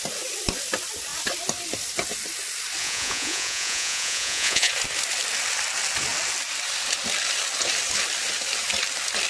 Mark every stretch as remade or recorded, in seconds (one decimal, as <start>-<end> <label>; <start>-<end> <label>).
0.0-2.8 recorded; 2.8-4.7 remade; 4.7-9.3 recorded